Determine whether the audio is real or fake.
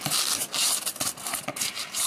real